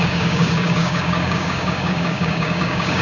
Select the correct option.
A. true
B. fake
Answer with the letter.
B